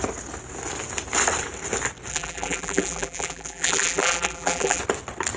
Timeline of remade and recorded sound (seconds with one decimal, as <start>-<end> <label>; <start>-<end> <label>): 0.0-2.1 recorded; 2.1-4.8 remade; 4.8-5.4 recorded